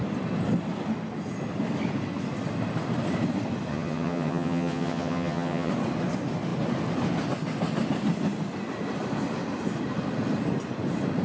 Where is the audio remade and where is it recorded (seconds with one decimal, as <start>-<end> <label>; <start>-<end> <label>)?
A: 0.0-3.7 recorded; 3.7-5.7 remade; 5.7-11.2 recorded